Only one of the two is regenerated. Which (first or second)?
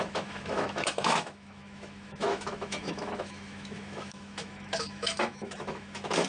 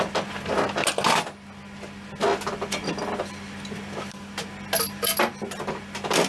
first